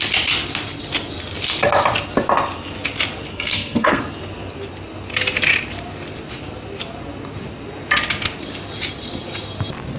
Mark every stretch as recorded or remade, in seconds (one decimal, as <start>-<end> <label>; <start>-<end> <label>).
0.0-3.3 recorded; 3.3-4.0 remade; 4.0-10.0 recorded